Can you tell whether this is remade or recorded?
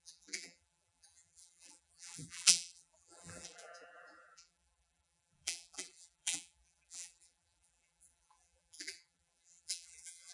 remade